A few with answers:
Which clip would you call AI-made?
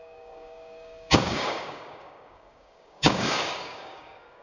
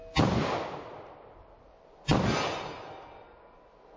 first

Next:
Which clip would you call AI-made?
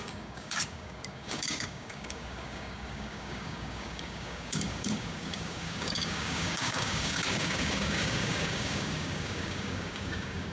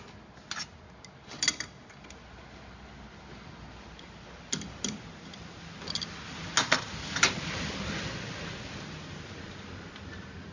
first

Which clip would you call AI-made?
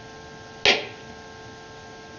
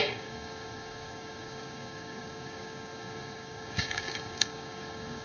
second